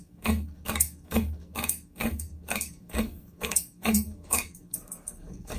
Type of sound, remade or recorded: remade